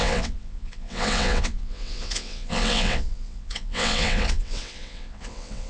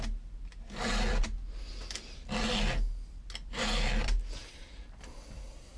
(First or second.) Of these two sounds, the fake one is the first